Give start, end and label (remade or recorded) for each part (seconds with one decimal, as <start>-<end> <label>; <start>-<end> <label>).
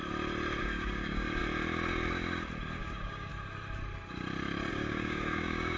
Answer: 0.0-0.6 recorded; 0.6-1.4 remade; 1.4-2.8 recorded; 2.8-3.3 remade; 3.3-4.7 recorded; 4.7-5.8 remade